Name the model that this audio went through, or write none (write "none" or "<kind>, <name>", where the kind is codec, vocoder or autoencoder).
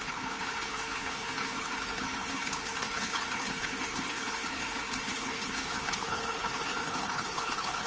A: codec, HILCodec